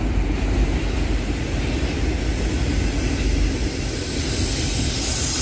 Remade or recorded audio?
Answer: recorded